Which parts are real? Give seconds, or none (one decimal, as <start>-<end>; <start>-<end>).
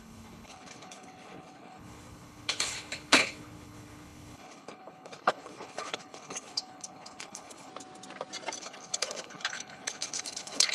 7.7-8.6